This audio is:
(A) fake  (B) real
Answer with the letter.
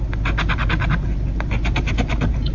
B